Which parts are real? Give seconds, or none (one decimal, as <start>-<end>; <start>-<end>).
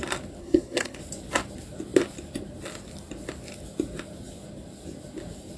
0.0-0.4; 1.0-5.6